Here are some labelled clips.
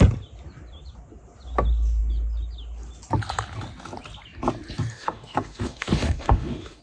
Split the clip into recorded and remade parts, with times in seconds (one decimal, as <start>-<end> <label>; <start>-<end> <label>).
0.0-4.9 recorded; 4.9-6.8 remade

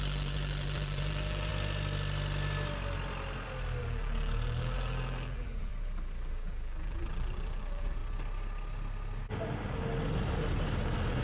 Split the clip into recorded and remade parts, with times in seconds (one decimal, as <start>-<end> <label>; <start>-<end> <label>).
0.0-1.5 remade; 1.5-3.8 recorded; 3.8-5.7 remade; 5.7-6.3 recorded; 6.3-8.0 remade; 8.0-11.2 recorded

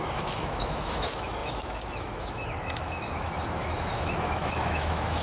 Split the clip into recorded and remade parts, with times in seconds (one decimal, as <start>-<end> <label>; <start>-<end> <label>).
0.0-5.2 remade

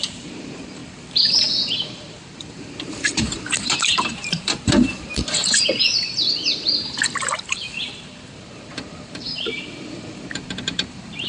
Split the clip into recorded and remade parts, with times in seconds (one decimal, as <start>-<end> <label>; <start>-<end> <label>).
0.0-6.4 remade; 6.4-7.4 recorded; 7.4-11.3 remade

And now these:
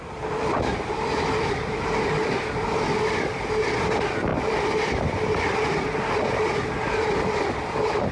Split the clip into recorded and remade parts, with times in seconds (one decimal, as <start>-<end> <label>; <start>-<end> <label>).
0.0-8.1 recorded

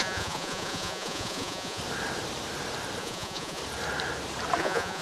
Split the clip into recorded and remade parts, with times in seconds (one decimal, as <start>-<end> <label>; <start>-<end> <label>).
0.0-1.8 remade; 1.8-3.0 recorded; 3.0-3.6 remade; 3.6-4.6 recorded; 4.6-5.0 remade